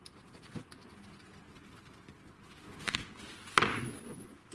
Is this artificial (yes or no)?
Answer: no